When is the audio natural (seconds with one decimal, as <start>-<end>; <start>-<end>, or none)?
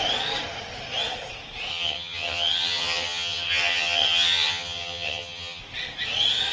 0.0-1.7; 5.6-6.5